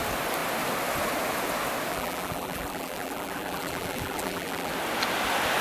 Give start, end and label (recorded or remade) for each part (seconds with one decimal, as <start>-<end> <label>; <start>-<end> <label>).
0.0-1.9 recorded; 1.9-4.7 remade; 4.7-5.6 recorded